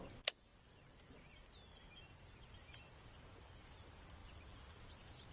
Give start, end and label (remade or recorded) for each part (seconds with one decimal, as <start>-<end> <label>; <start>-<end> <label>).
0.0-5.3 recorded